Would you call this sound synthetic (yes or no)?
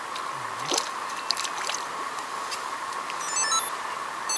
no